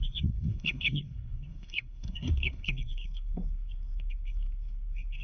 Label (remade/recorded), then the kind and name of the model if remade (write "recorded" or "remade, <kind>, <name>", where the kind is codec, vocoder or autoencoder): remade, codec, SNAC